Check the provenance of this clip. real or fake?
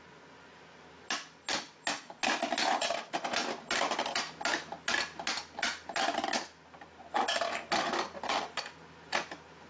real